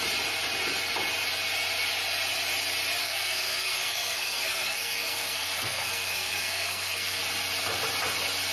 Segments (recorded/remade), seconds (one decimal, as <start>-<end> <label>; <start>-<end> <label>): 0.0-3.0 recorded; 3.0-7.2 remade; 7.2-8.5 recorded